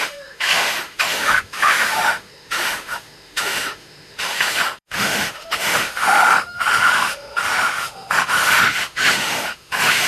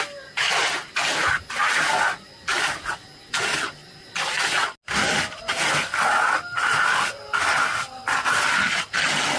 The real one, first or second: second